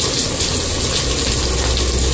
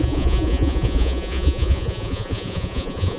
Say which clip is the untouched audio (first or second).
first